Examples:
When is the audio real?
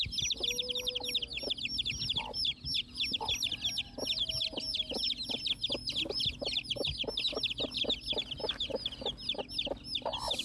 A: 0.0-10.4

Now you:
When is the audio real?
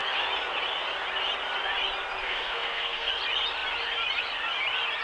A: 0.0-2.2; 3.1-5.0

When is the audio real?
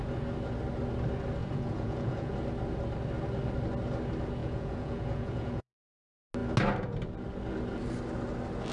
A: 0.0-1.4; 2.3-4.4; 6.0-8.7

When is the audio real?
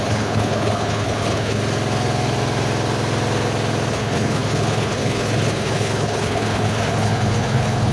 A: 1.6-3.9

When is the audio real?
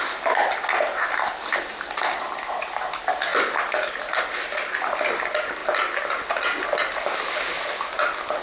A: 0.0-8.4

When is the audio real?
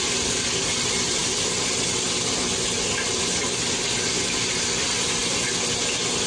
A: 0.0-6.3